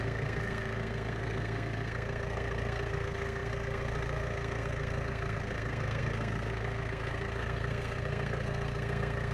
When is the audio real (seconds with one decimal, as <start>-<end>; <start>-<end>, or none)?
none